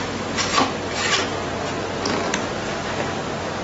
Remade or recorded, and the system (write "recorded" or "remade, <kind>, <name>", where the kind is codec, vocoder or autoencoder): recorded